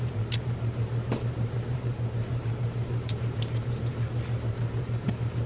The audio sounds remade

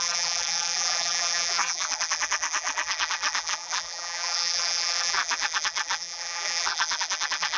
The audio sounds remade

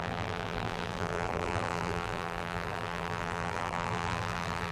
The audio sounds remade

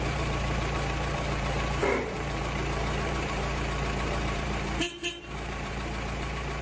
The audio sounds remade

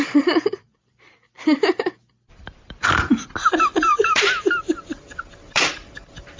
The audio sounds remade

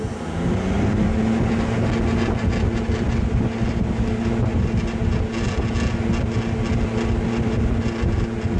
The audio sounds recorded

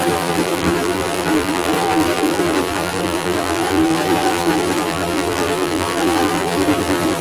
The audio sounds remade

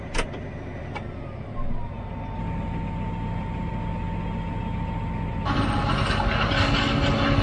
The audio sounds recorded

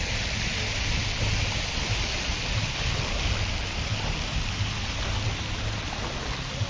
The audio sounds recorded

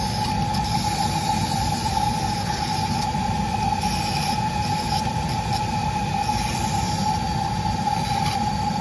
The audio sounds remade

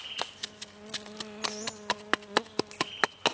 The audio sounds recorded